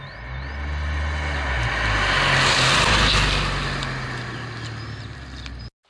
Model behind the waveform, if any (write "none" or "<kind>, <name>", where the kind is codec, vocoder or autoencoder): none